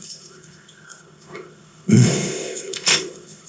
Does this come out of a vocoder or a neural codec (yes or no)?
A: yes